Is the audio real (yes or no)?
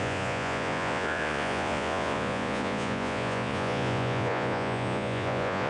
no